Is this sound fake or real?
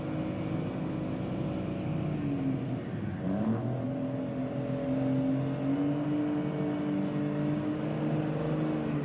real